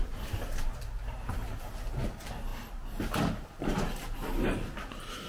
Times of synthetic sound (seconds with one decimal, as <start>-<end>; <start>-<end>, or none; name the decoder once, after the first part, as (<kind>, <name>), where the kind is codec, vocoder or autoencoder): none